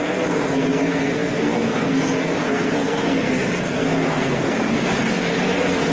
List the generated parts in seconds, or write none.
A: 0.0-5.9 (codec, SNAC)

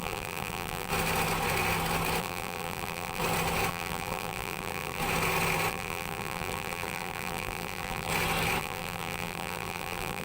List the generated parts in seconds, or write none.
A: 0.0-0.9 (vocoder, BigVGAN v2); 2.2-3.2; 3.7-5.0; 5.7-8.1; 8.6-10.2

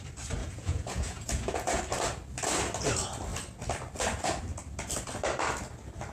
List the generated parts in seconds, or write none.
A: 0.4-1.8 (vocoder, Vocos)